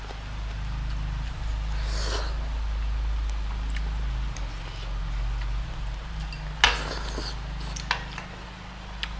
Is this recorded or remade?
recorded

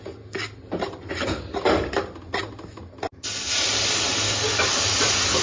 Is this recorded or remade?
recorded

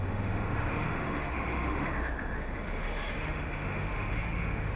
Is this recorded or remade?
remade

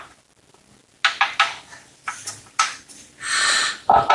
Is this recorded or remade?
recorded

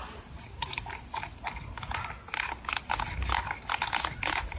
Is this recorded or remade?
recorded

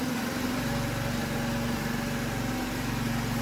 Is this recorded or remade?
recorded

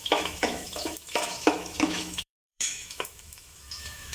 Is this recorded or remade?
remade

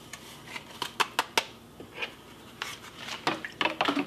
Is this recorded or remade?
recorded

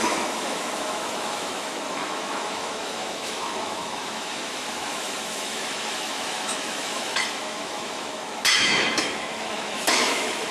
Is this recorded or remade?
remade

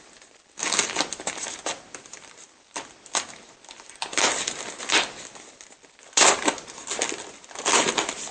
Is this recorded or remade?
recorded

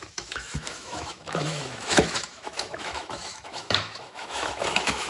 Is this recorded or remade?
remade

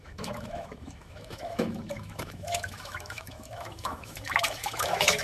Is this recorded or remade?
remade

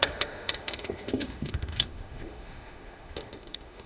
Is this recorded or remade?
remade